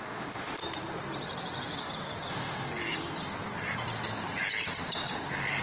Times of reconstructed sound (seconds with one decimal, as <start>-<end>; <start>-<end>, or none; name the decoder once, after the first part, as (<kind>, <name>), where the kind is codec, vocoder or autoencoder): 0.0-0.6 (autoencoder, DAC-VAE); 2.3-2.7